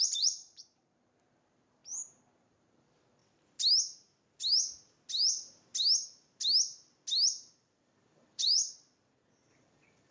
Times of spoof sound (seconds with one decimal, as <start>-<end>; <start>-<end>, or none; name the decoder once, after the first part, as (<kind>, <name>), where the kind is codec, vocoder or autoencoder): 0.0-1.8 (vocoder, BigVGAN v2); 2.4-3.2; 7.5-8.6; 9.5-10.1